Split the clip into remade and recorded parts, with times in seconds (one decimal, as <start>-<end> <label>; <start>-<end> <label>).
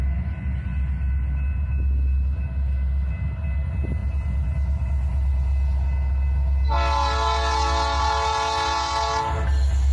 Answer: 0.0-9.9 recorded